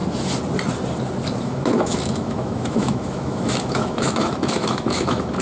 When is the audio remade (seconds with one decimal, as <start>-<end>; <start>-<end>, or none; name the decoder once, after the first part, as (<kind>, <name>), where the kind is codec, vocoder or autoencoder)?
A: 1.4-5.4 (autoencoder, DAC-VAE)